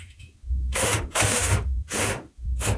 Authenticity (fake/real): fake